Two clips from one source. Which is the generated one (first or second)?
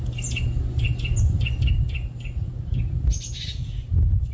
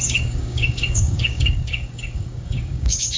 second